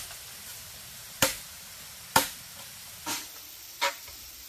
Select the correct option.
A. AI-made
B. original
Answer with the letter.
B